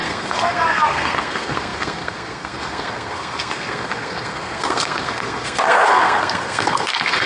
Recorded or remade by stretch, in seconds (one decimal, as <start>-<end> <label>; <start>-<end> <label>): 0.0-7.3 remade